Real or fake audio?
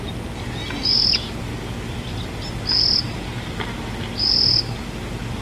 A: real